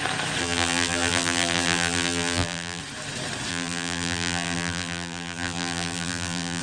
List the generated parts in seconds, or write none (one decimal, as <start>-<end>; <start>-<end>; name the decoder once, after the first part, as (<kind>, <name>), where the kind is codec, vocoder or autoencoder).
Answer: 0.4-2.8 (vocoder, BigVGAN v2); 3.5-6.6